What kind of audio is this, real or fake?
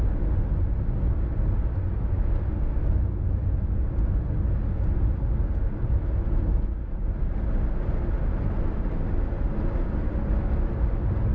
real